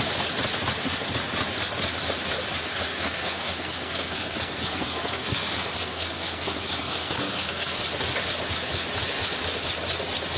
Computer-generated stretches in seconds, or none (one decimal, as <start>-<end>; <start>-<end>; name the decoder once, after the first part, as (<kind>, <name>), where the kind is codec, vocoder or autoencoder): 2.7-7.8 (codec, SNAC)